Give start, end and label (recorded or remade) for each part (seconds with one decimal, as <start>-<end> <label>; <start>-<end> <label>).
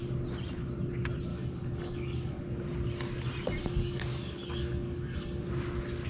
0.0-1.3 recorded; 1.3-2.4 remade; 2.4-3.6 recorded; 3.6-5.5 remade; 5.5-6.1 recorded